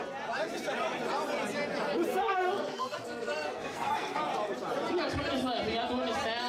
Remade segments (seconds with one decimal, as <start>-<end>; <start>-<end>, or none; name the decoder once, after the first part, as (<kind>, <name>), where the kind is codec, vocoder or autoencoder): 2.1-4.2 (codec, SNAC)